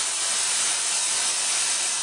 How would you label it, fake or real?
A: real